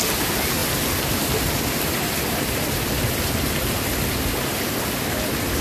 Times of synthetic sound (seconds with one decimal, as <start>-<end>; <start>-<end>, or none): none